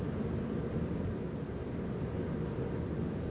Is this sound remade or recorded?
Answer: recorded